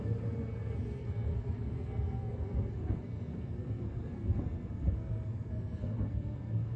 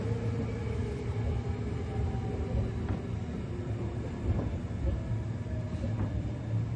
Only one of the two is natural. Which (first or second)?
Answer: second